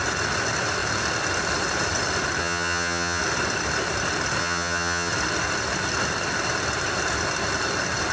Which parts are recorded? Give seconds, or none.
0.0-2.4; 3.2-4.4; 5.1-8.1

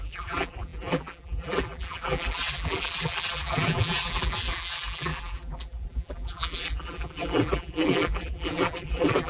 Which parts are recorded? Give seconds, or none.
none